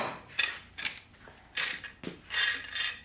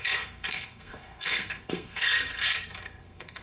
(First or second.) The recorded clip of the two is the first